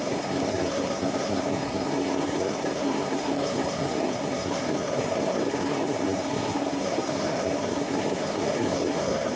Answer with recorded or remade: remade